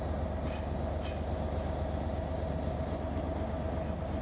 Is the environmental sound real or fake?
real